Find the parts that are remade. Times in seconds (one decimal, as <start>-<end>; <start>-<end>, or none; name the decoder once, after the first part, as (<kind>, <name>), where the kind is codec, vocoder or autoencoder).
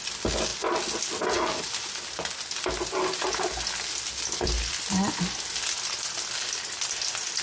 none